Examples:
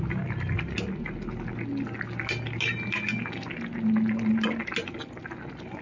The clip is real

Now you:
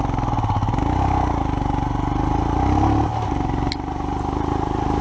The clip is real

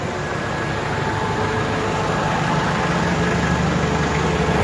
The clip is real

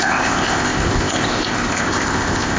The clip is fake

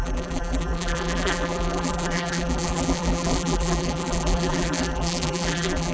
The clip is fake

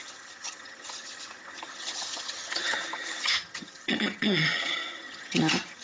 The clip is fake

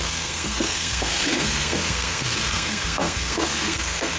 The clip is fake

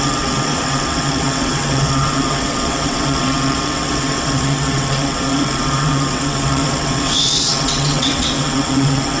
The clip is fake